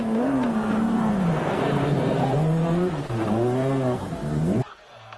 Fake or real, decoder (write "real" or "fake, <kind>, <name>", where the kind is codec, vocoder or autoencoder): fake, codec, SNAC